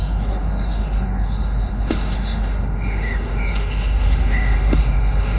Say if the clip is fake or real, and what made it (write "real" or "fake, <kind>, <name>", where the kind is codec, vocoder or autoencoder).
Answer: fake, autoencoder, DAC-VAE